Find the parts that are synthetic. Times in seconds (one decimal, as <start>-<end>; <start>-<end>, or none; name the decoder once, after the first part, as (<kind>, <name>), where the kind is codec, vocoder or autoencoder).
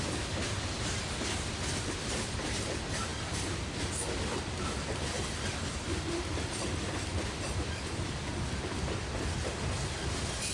3.1-3.9 (vocoder, BigVGAN v2)